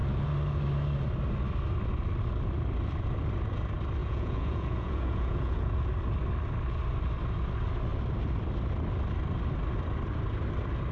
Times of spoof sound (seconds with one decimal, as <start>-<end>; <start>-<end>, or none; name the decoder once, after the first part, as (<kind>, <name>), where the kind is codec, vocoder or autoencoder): 4.0-5.8 (vocoder, Vocos)